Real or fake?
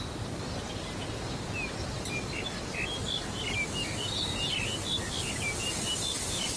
real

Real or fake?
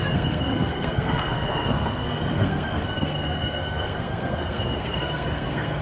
fake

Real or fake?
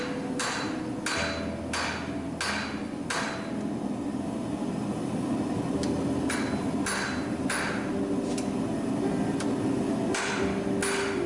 real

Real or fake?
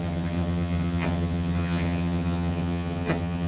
fake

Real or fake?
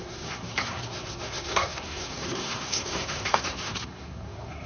fake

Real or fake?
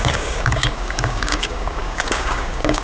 fake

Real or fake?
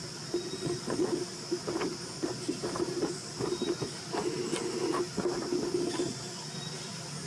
real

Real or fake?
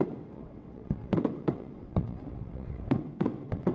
fake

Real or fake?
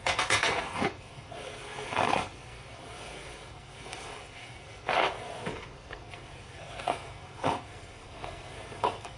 fake